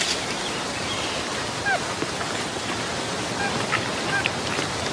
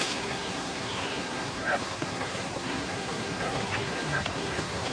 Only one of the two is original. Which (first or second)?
first